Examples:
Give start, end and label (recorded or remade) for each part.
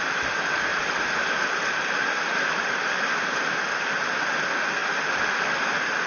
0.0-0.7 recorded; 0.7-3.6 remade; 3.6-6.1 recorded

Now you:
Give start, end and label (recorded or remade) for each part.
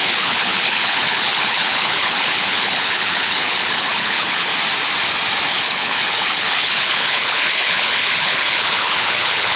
0.0-4.5 remade; 4.5-5.5 recorded; 5.5-9.6 remade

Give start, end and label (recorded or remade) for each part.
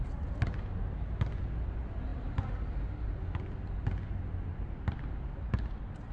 0.0-6.1 recorded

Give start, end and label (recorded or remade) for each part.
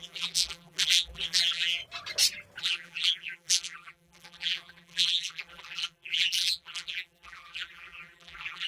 0.0-1.8 remade; 1.8-2.6 recorded; 2.6-8.7 remade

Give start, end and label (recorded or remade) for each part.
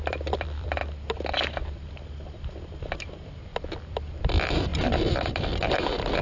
0.0-0.8 remade; 0.8-3.0 recorded; 3.0-6.2 remade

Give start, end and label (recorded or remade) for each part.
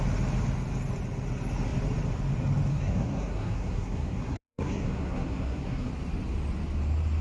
0.0-2.7 recorded; 2.7-5.9 remade; 5.9-7.2 recorded